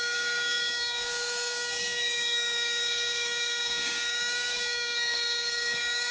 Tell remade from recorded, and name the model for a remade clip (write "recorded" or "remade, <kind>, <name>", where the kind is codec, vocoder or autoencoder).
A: remade, codec, DAC